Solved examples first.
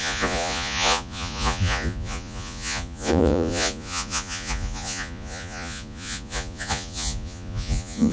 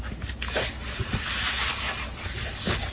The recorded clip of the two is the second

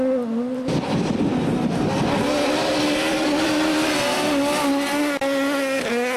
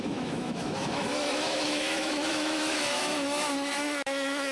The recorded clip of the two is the first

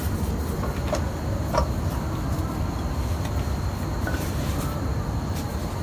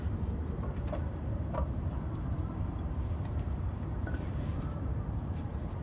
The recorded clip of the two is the first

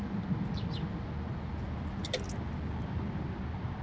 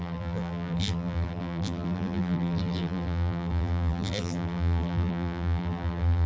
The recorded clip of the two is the first